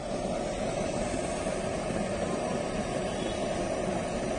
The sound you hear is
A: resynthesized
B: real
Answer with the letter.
B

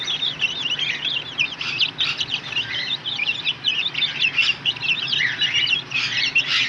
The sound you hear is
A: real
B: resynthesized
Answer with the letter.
A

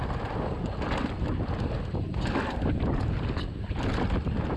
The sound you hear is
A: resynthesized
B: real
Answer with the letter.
B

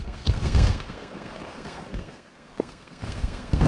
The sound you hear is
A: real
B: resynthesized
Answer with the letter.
B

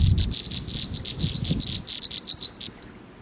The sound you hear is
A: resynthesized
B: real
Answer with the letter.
B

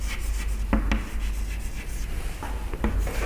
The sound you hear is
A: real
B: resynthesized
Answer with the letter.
A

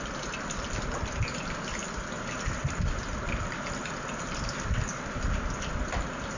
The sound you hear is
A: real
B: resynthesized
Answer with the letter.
A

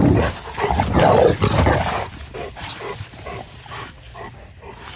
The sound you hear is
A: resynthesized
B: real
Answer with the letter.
B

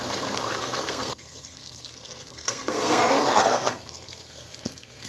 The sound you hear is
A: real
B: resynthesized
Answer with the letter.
B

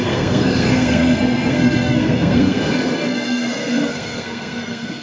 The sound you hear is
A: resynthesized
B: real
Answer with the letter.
A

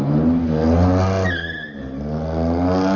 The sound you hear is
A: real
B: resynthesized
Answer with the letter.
A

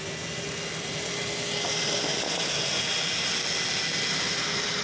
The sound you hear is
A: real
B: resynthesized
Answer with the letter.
A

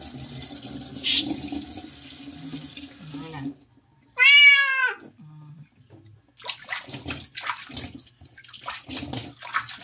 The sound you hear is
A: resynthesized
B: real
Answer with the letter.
B